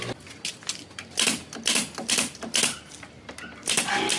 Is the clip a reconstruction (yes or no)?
no